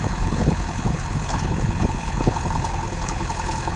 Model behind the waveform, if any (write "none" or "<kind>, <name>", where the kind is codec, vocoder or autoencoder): codec, HILCodec